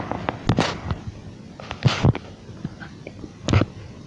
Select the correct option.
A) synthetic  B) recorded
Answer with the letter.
B